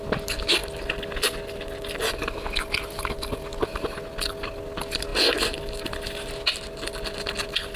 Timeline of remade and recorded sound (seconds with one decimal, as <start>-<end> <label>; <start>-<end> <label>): 0.0-7.8 recorded